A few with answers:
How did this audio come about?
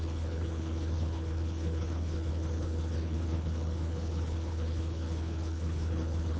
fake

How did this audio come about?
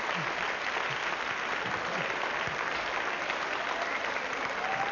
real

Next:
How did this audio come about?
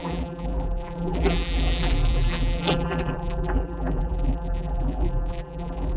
fake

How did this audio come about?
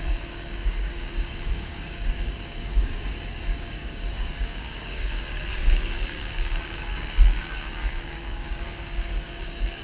fake